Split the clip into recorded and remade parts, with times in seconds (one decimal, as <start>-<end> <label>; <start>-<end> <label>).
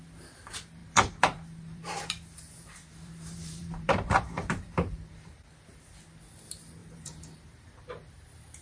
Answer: 0.0-0.8 recorded; 0.8-6.0 remade; 6.0-6.8 recorded; 6.8-7.8 remade; 7.8-8.6 recorded